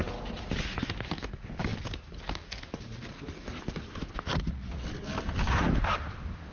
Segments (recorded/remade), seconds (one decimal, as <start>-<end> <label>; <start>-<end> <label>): 0.0-6.5 recorded